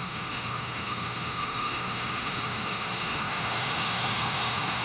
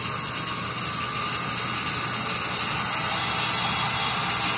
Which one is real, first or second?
second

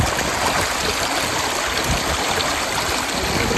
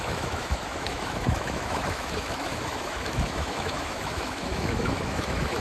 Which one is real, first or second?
first